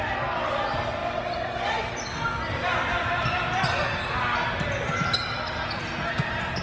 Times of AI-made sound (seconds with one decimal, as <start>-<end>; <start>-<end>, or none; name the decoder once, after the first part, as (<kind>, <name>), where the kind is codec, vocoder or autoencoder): none